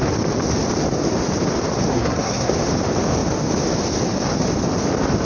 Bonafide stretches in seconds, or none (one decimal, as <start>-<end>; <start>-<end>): 0.0-1.9; 2.5-5.2